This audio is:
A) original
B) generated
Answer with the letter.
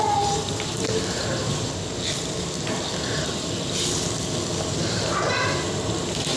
B